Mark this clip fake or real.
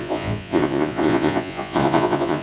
fake